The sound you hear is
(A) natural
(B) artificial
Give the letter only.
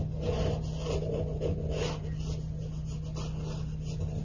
A